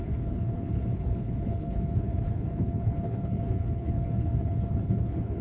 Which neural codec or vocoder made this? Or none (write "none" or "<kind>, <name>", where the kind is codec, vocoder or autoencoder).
codec, HILCodec